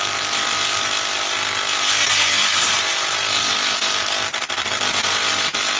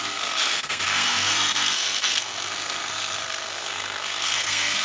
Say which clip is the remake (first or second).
second